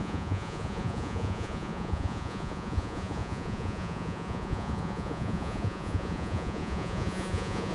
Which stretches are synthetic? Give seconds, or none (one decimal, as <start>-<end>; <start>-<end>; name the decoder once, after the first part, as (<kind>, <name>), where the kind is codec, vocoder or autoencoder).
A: 0.0-7.7 (vocoder, Vocos)